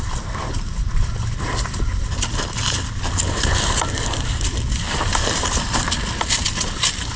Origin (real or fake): fake